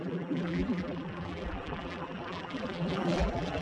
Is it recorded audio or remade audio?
remade